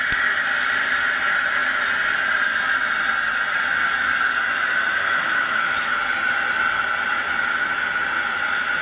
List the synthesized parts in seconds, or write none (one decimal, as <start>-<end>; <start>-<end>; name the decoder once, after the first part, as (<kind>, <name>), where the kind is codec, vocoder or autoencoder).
4.6-5.9 (autoencoder, DAC-VAE)